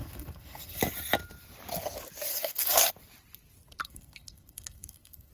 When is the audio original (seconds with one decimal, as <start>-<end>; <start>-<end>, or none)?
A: 0.8-2.3; 2.9-3.8